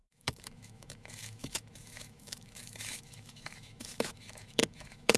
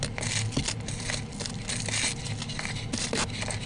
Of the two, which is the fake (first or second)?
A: first